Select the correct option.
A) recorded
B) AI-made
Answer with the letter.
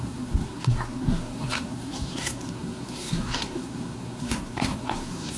B